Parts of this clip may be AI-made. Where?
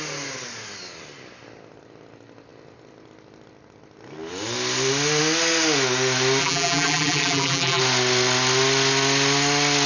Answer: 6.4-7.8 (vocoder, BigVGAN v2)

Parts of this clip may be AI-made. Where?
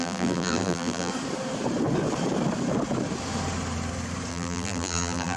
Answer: 0.0-1.1 (vocoder, BigVGAN v2); 4.3-5.4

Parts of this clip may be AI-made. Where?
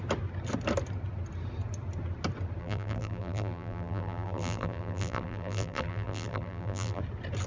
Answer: 2.6-7.0 (vocoder, BigVGAN v2)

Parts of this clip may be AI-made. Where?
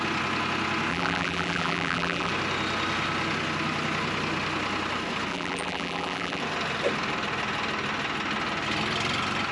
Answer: 0.9-2.3 (vocoder, BigVGAN v2); 5.3-6.4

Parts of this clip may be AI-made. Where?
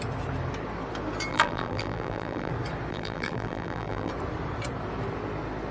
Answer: 1.3-2.5 (vocoder, BigVGAN v2); 2.9-4.1